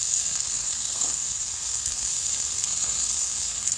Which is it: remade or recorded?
remade